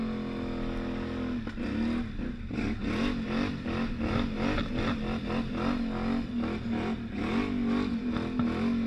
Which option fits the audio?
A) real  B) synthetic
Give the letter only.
A